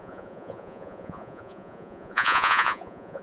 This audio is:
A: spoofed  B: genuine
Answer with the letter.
A